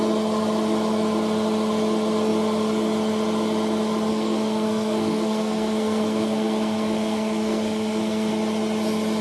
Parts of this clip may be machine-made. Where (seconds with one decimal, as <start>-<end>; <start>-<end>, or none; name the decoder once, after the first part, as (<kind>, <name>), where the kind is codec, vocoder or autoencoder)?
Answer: 4.1-8.3 (codec, SNAC)